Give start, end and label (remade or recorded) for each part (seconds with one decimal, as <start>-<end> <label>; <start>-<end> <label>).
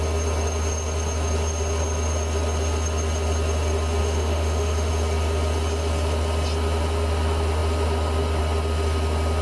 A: 0.0-4.0 recorded; 4.0-4.9 remade; 4.9-9.4 recorded